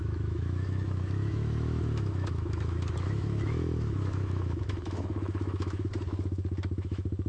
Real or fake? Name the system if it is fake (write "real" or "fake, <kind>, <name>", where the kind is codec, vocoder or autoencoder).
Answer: fake, autoencoder, DAC-VAE